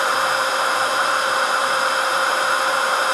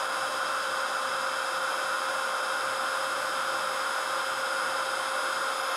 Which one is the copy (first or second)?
first